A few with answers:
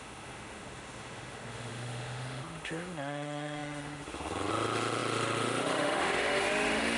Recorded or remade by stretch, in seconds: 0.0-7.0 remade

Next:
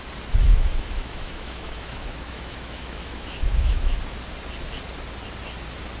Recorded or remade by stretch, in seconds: 0.0-0.5 recorded; 0.5-4.0 remade; 4.0-6.0 recorded

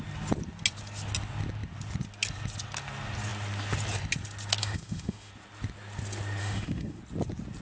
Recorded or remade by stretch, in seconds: 0.0-4.6 recorded; 4.6-5.3 remade; 5.3-6.4 recorded; 6.4-7.0 remade; 7.0-7.6 recorded

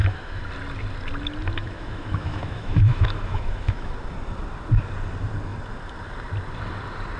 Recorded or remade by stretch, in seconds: 0.0-0.5 remade; 0.5-1.6 recorded; 1.6-3.9 remade; 3.9-7.2 recorded